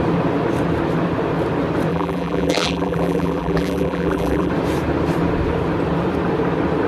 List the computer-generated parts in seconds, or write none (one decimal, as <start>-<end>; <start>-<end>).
1.9-4.5

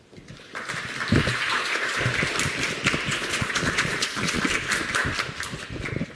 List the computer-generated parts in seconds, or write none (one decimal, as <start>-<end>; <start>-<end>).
1.5-2.0; 3.1-4.4